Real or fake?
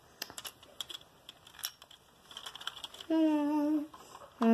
real